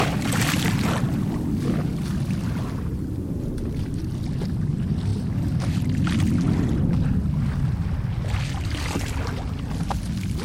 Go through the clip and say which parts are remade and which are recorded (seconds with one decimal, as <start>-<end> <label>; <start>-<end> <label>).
0.0-10.4 recorded